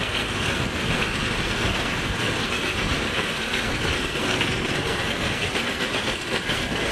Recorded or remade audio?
remade